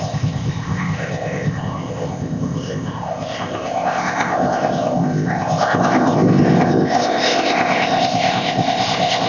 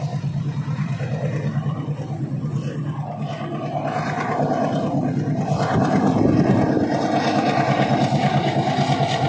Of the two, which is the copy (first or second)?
first